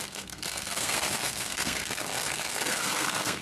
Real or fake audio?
fake